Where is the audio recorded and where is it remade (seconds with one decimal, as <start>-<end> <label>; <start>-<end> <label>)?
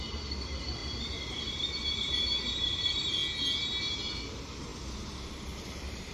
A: 0.0-0.8 remade; 0.8-1.3 recorded; 1.3-3.2 remade; 3.2-3.8 recorded; 3.8-6.1 remade